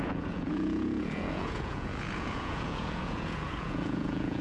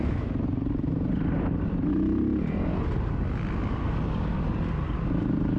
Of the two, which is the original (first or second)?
second